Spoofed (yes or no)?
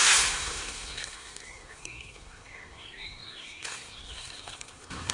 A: yes